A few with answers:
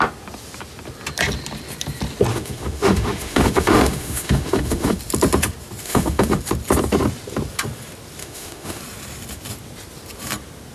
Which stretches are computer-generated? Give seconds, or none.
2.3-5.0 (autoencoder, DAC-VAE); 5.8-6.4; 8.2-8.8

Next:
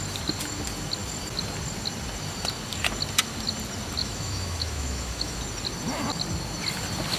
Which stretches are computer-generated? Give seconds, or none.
4.0-5.4 (autoencoder, DAC-VAE)

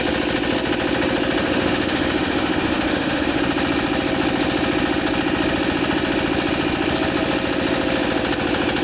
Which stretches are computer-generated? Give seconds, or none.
1.4-3.4 (autoencoder, DAC-VAE)

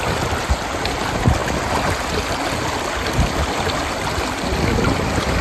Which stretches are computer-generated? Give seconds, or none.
none